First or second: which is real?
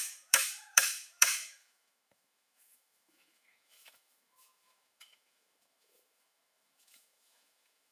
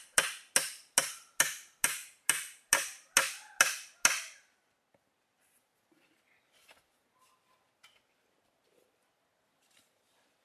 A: second